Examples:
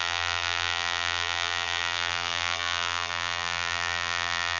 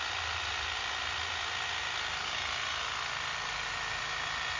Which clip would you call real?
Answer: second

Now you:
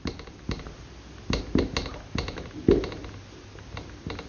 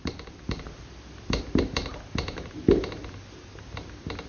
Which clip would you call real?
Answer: first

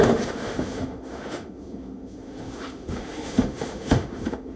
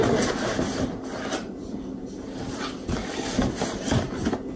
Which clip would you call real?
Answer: second